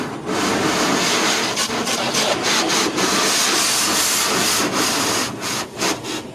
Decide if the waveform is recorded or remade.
recorded